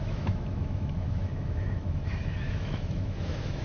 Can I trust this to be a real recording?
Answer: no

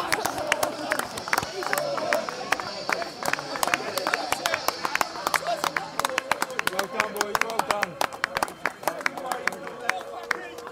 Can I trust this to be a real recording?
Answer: no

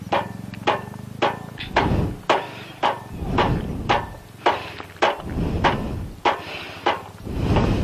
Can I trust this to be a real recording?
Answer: yes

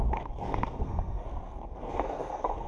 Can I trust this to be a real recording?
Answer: no